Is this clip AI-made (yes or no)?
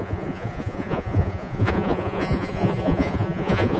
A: yes